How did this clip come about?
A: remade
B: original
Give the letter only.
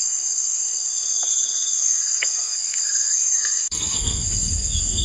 A